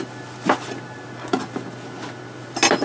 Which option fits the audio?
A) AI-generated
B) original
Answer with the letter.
B